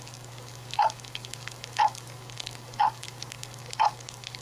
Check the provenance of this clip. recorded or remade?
remade